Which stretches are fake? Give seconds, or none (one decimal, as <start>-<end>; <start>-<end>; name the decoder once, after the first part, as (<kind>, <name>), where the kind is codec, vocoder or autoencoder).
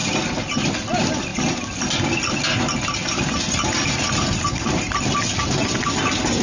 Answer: 0.0-0.7 (vocoder, BigVGAN v2)